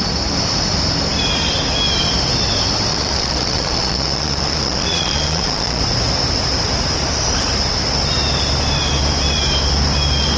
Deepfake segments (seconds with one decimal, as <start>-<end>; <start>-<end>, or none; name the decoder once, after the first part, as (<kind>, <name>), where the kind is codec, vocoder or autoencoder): 2.9-5.8 (vocoder, Vocos)